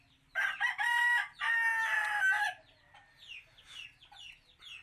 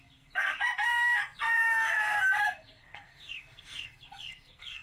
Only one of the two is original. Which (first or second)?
first